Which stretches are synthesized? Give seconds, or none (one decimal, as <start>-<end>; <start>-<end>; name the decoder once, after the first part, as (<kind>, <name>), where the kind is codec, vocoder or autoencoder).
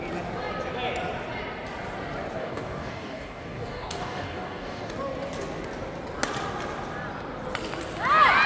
2.4-4.9 (codec, DAC)